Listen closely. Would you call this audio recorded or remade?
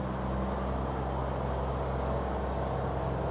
recorded